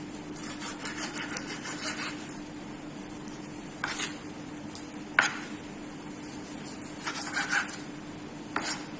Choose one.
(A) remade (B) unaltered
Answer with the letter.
B